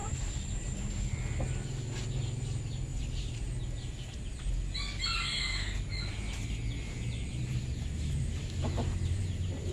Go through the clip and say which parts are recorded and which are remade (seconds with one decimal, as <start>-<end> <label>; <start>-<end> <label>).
0.0-0.9 remade; 0.9-2.9 recorded; 2.9-4.5 remade; 4.5-7.2 recorded; 7.2-9.7 remade